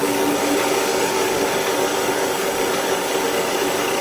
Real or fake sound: fake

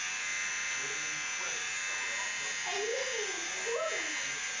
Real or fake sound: real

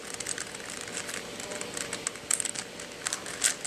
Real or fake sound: real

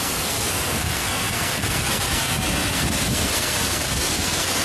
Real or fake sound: fake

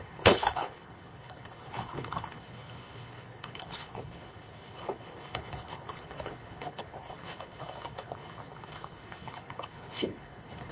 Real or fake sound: fake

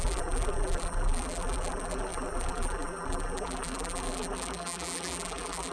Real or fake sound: fake